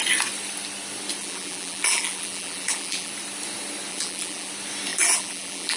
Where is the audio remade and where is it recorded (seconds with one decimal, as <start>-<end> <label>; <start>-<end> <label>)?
0.0-1.2 recorded; 1.2-3.1 remade; 3.1-3.9 recorded; 3.9-4.5 remade; 4.5-4.9 recorded; 4.9-5.8 remade